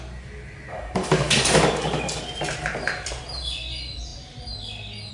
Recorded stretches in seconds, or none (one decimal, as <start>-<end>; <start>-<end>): 0.0-0.7; 2.2-5.1